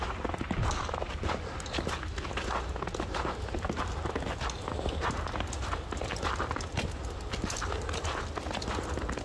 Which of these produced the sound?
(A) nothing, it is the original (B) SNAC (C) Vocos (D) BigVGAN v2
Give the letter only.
A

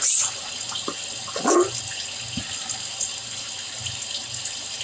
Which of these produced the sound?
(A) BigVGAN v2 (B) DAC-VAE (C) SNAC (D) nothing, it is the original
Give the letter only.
D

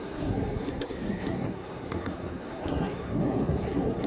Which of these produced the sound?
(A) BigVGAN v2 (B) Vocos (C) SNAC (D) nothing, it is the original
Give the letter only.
C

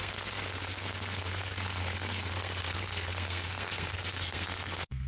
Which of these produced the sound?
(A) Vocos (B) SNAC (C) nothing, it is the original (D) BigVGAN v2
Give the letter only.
B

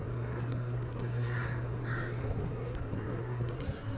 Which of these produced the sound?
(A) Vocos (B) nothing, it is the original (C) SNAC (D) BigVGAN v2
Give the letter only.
C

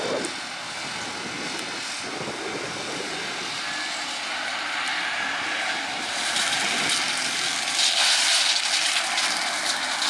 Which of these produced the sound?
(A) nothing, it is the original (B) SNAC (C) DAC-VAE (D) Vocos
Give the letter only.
A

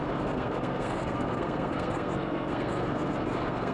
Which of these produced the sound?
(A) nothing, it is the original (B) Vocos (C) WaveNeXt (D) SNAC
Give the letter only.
D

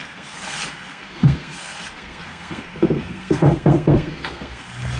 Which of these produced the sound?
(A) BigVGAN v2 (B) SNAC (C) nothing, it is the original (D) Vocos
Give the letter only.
B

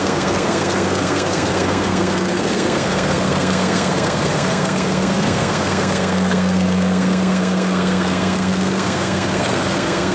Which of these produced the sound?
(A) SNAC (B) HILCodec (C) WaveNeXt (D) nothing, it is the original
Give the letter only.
A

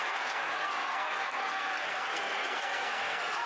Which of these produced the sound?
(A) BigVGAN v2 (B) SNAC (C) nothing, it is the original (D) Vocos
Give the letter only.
B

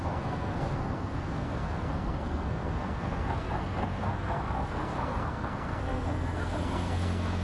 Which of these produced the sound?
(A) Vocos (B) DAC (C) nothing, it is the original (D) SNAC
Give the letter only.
D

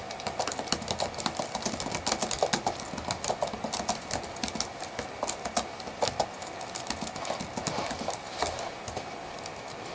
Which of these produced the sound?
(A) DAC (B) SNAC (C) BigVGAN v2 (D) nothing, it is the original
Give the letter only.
D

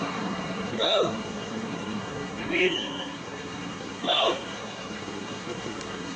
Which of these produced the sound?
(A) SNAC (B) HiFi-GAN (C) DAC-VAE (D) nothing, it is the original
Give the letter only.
A